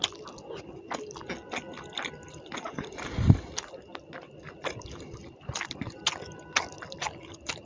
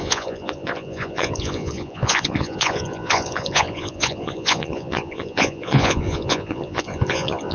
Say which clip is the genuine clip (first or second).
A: first